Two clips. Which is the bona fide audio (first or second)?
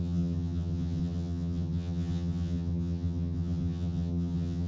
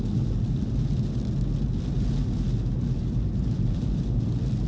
second